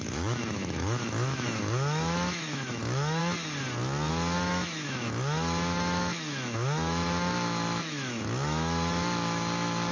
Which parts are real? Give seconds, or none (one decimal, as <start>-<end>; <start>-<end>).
3.2-4.1